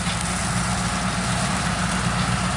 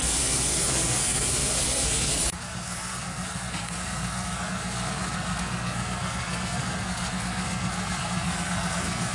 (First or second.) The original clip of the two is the first